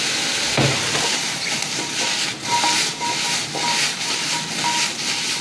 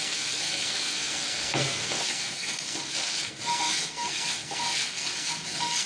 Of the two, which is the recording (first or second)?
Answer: first